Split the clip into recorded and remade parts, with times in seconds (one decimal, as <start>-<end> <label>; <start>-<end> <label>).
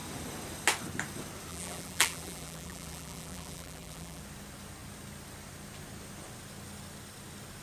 0.0-1.5 recorded; 1.5-4.2 remade; 4.2-7.6 recorded